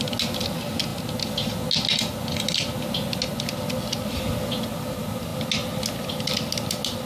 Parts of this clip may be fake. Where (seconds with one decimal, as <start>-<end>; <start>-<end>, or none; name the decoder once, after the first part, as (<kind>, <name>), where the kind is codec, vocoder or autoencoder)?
none